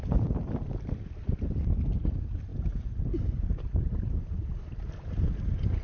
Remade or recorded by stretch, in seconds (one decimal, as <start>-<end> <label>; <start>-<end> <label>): 0.0-5.8 recorded

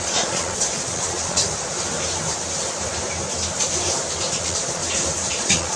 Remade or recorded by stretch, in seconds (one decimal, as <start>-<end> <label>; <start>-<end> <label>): 0.0-1.4 remade; 1.4-4.3 recorded; 4.3-4.8 remade; 4.8-5.3 recorded; 5.3-5.8 remade